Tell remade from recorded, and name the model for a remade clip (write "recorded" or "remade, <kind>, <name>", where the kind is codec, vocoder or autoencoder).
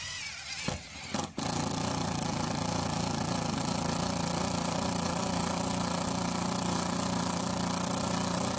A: recorded